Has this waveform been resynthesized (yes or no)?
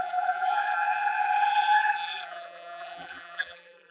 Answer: yes